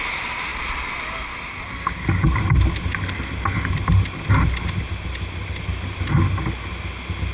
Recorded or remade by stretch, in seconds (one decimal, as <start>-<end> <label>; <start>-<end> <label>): 0.0-7.3 recorded

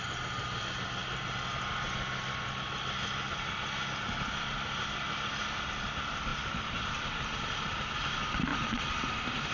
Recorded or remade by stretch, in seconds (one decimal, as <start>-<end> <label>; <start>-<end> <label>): 0.0-6.3 recorded; 6.3-7.9 remade; 7.9-8.5 recorded; 8.5-9.5 remade